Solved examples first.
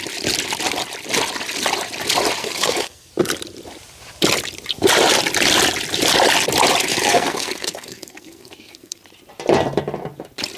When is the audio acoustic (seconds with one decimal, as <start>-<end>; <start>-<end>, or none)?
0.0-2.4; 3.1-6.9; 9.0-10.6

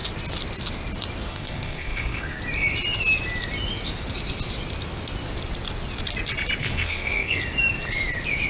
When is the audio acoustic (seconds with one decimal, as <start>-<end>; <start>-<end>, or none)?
0.0-1.3; 2.4-6.6; 7.4-8.5

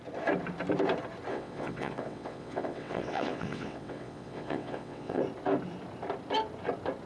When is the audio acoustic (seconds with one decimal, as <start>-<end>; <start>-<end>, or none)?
0.0-1.3; 5.2-7.1